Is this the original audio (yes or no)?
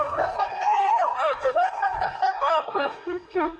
no